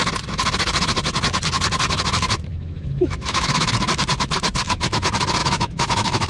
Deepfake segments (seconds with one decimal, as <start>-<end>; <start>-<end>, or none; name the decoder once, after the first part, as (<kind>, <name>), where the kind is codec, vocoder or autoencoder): 2.5-3.7 (autoencoder, DAC-VAE); 5.4-6.3